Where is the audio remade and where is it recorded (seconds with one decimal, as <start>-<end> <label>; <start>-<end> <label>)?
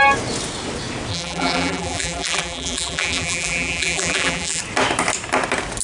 0.0-1.1 recorded; 1.1-4.6 remade; 4.6-5.8 recorded